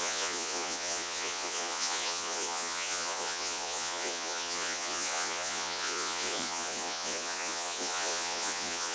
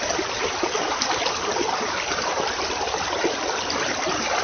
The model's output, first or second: first